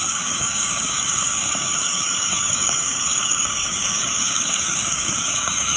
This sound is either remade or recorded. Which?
remade